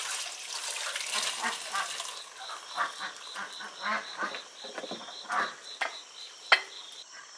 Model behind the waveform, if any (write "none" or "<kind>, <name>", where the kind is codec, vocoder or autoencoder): none